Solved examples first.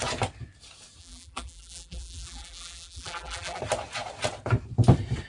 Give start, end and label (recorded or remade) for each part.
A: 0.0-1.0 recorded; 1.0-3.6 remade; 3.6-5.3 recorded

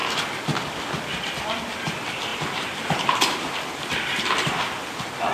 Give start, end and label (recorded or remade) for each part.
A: 0.0-2.3 recorded; 2.3-3.5 remade; 3.5-5.3 recorded

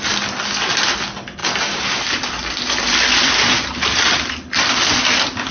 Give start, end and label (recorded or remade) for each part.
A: 0.0-1.4 recorded; 1.4-4.7 remade; 4.7-5.5 recorded

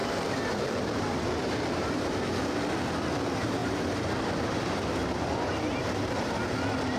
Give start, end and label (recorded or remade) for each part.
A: 0.0-2.1 remade; 2.1-3.6 recorded; 3.6-6.1 remade; 6.1-7.0 recorded